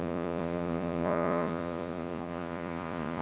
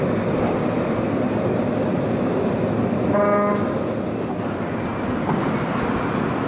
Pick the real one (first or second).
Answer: second